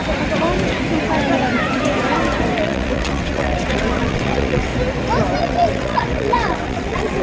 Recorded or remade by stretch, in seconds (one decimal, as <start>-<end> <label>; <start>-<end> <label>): 0.0-2.6 recorded; 2.6-4.7 remade; 4.7-5.4 recorded; 5.4-7.2 remade